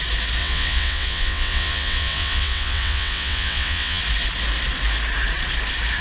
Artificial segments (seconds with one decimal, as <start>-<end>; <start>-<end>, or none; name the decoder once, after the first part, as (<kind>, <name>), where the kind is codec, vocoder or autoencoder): 0.4-4.0 (vocoder, WaveNeXt)